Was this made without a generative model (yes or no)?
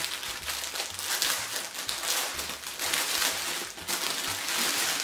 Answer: yes